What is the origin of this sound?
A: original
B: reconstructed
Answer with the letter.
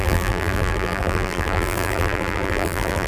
B